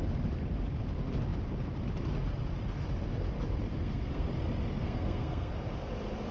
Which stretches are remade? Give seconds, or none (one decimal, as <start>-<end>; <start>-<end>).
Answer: 3.7-4.3; 4.8-5.5